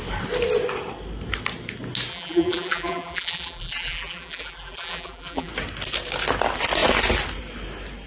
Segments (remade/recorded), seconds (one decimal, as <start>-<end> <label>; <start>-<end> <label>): 0.0-2.1 recorded; 2.1-5.5 remade; 5.5-8.1 recorded